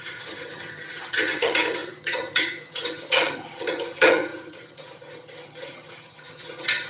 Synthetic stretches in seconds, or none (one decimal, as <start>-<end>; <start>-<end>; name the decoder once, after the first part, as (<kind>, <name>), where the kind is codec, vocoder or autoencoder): 0.0-6.9 (vocoder, HiFi-GAN)